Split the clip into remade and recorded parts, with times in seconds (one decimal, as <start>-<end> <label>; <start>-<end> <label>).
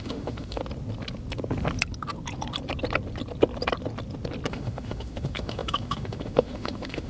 0.0-0.6 remade; 0.6-4.5 recorded; 4.5-7.1 remade